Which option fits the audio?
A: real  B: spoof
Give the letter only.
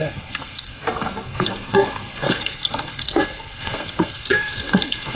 B